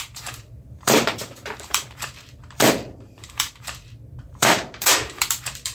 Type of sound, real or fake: fake